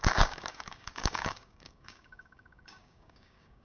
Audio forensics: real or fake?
fake